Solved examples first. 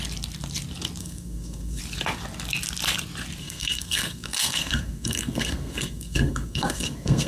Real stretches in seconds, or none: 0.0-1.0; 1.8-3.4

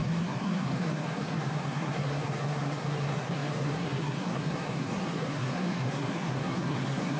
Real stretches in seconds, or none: none